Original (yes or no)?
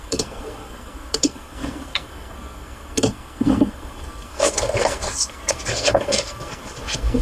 no